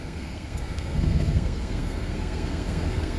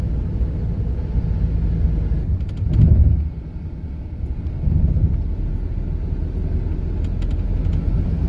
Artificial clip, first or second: first